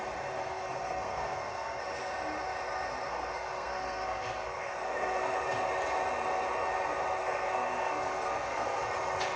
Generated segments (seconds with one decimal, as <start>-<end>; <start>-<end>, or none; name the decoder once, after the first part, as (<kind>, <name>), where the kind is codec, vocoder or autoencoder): 0.4-1.8 (codec, SNAC); 3.1-5.3; 7.2-8.8